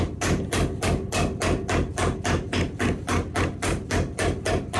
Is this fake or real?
real